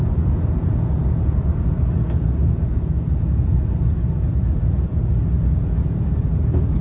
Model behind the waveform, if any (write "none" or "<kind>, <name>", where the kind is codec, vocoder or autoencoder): vocoder, Vocos